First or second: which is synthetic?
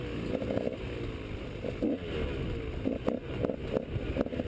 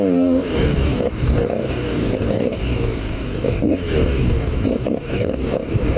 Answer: second